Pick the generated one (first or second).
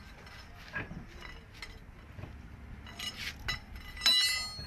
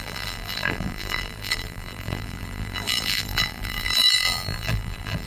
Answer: second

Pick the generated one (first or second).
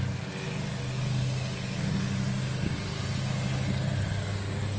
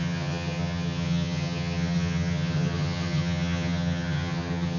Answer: second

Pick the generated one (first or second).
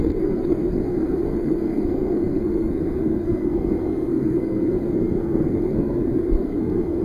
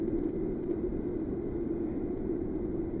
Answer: first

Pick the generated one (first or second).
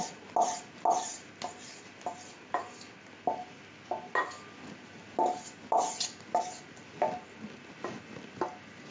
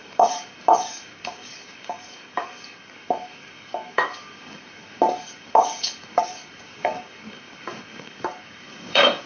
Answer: second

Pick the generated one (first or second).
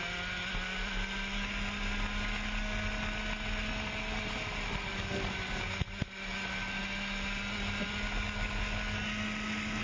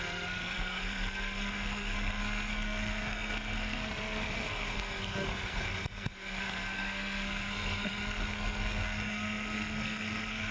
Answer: second